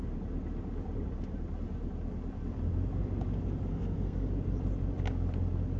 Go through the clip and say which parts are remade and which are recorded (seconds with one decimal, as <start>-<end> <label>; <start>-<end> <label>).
0.0-3.7 recorded; 3.7-4.3 remade; 4.3-5.8 recorded